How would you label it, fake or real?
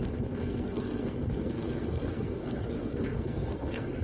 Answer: fake